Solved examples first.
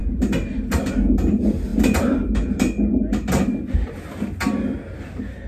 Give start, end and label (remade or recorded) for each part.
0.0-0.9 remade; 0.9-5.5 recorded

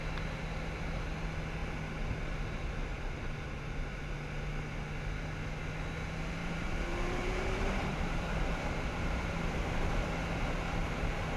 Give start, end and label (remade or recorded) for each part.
0.0-2.9 recorded; 2.9-4.0 remade; 4.0-6.4 recorded; 6.4-9.9 remade; 9.9-10.8 recorded; 10.8-11.4 remade

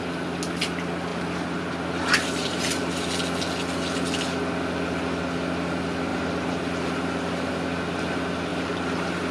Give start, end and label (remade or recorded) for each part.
0.0-1.1 recorded; 1.1-3.1 remade; 3.1-6.1 recorded; 6.1-7.5 remade; 7.5-8.5 recorded; 8.5-9.3 remade

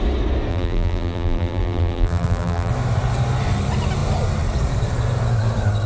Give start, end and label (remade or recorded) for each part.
0.0-0.5 recorded; 0.5-2.7 remade; 2.7-5.9 recorded